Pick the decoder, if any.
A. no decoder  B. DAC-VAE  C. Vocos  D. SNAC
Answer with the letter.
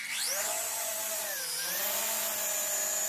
A